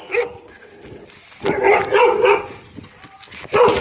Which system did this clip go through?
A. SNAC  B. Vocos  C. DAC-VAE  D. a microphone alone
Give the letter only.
D